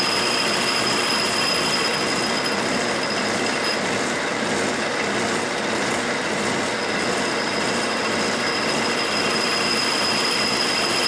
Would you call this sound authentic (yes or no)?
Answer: yes